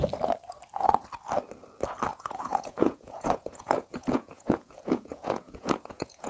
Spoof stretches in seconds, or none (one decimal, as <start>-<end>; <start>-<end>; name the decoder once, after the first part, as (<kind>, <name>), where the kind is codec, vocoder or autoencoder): 2.1-6.3 (vocoder, Vocos)

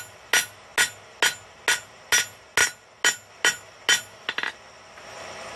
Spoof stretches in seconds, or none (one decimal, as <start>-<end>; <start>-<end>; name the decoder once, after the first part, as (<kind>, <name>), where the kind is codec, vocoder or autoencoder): none

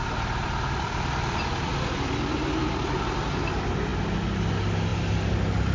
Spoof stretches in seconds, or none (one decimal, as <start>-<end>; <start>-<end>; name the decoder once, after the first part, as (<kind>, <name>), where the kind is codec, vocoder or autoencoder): 0.0-3.4 (vocoder, BigVGAN v2); 4.9-5.7

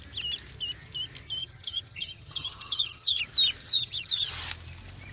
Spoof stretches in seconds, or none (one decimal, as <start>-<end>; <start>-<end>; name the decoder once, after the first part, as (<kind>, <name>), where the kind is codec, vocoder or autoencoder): 1.4-3.2 (vocoder, HiFi-GAN); 3.6-4.3